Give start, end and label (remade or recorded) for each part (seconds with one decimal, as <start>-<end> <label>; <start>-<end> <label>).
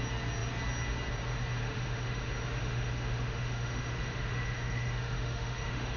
0.0-1.6 recorded; 1.6-2.2 remade; 2.2-2.6 recorded; 2.6-6.0 remade